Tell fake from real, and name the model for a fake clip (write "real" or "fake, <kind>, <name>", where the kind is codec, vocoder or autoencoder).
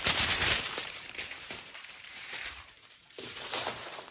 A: fake, vocoder, BigVGAN v2